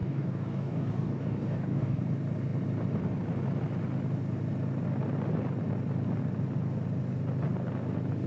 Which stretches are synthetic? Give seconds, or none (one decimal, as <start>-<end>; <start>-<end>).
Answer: 0.0-2.0